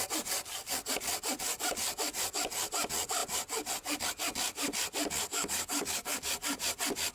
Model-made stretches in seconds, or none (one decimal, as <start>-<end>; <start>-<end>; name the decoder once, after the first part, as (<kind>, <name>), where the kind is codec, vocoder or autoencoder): 5.3-6.3 (codec, DAC)